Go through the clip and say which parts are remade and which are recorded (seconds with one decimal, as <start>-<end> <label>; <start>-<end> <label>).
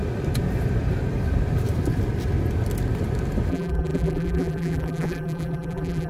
0.0-3.5 recorded; 3.5-6.1 remade